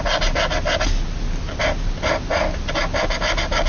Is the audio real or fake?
real